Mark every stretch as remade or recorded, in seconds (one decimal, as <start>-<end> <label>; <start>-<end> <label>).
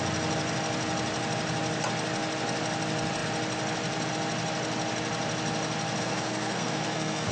0.0-6.0 recorded; 6.0-7.3 remade